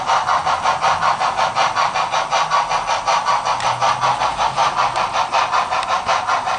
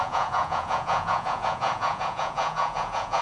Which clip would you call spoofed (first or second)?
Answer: second